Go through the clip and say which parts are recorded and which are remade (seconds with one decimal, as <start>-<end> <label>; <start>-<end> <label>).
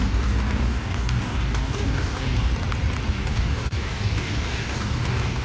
0.0-2.5 remade; 2.5-3.1 recorded; 3.1-5.4 remade